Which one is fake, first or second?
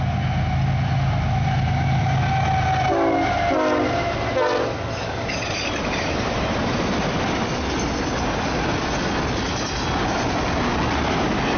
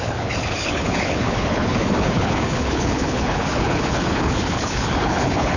second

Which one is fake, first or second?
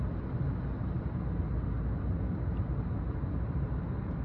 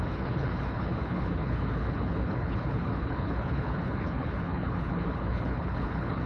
second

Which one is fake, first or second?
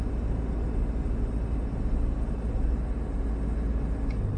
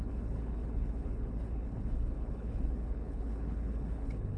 second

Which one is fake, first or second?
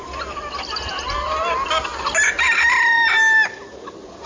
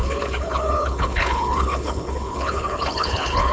second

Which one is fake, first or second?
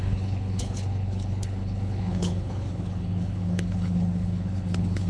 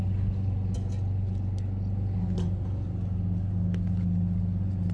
first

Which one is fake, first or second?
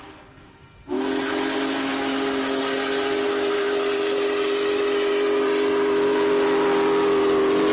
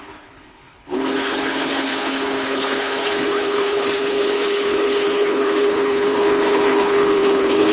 second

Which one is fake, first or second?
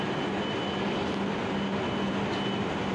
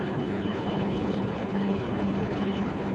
second